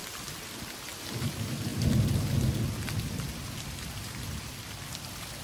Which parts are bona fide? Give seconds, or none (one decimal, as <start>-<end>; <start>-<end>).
1.7-4.9